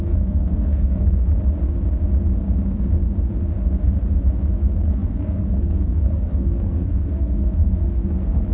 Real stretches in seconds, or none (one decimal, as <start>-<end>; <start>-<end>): 1.3-4.5